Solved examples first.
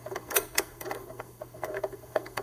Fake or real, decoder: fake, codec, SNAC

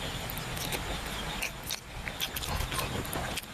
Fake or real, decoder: real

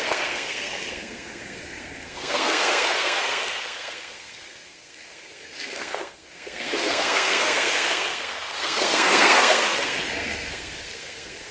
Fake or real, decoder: fake, codec, SNAC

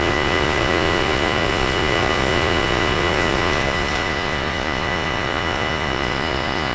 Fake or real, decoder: fake, vocoder, Vocos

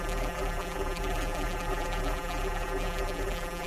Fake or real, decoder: fake, vocoder, BigVGAN v2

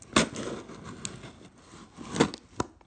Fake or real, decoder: real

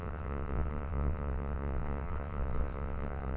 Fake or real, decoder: fake, vocoder, WaveNeXt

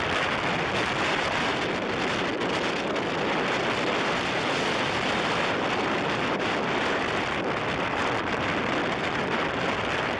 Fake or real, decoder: real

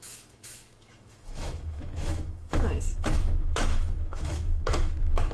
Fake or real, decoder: fake, autoencoder, DAC-VAE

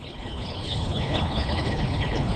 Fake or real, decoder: fake, codec, HILCodec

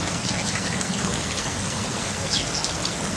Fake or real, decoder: fake, codec, SNAC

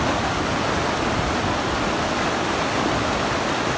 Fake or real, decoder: real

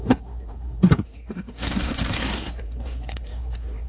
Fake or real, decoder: fake, codec, SNAC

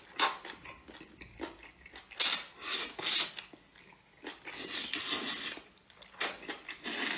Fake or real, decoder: real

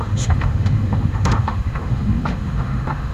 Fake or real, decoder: fake, autoencoder, DAC-VAE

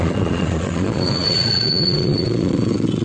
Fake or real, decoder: fake, vocoder, Vocos